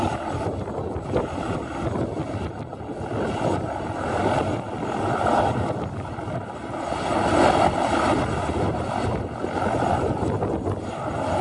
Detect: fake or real real